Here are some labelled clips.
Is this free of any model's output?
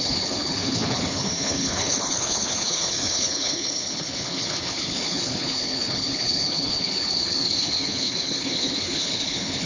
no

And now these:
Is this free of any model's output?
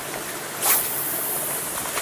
yes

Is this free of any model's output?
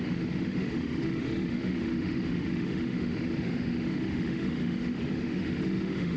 no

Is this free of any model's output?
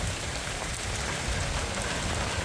yes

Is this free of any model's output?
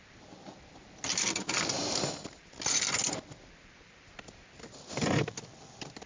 yes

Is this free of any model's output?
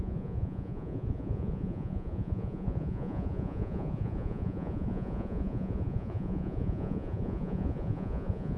no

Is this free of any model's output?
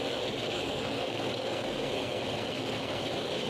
no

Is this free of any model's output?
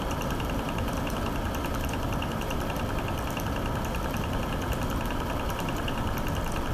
yes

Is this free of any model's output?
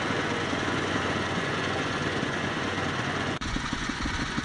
no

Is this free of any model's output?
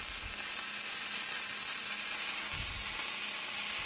yes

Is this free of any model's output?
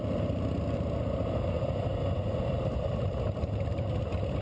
yes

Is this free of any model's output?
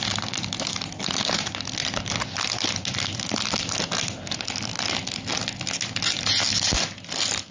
yes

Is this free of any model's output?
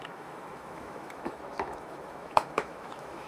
no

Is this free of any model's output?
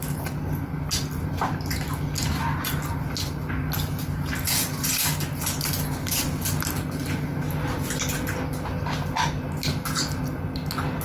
yes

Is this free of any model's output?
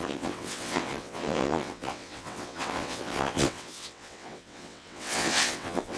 no